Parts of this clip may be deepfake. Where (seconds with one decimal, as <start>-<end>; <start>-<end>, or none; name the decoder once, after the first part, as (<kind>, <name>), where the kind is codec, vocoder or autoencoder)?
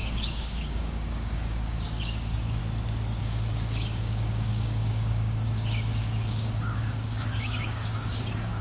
0.0-2.6 (codec, DAC); 3.2-8.6